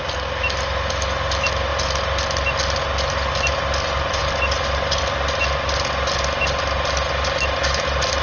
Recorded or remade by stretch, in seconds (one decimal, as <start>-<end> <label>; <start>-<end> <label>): 0.0-8.2 recorded